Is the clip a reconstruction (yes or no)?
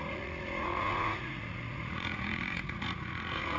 yes